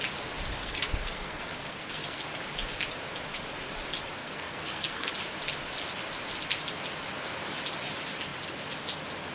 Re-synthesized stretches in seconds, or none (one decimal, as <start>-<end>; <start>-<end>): 0.6-2.2; 4.2-5.1